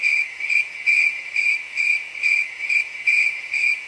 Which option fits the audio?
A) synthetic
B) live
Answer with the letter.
A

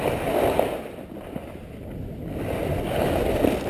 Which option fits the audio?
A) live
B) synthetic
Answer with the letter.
A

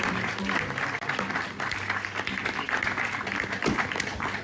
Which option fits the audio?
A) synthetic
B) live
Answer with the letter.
B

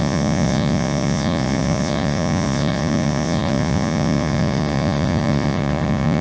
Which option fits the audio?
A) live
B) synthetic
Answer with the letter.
B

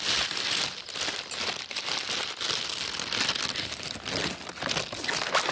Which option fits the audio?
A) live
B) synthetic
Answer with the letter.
A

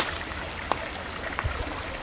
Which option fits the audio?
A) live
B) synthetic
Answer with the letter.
A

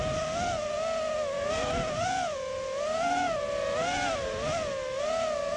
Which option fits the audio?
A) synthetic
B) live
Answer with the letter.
B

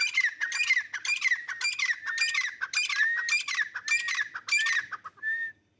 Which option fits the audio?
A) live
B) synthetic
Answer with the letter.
A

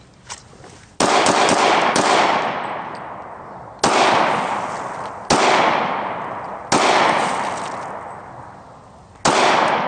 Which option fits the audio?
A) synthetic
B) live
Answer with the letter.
B